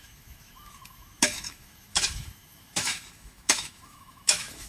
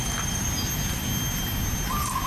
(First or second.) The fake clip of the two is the first